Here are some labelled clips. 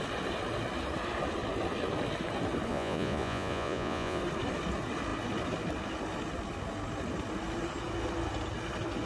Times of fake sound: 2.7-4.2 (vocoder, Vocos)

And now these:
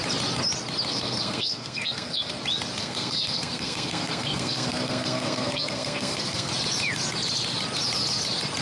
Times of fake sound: 0.9-2.3 (codec, SNAC); 2.8-6.5

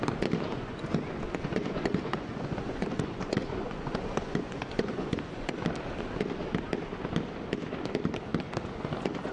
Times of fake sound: 0.5-5.6 (vocoder, Vocos)

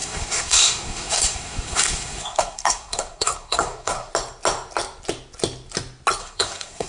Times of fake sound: 0.0-4.1 (codec, SNAC); 6.2-6.9

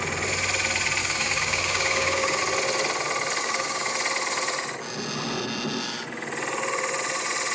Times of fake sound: 1.0-2.4 (codec, DAC); 3.4-3.9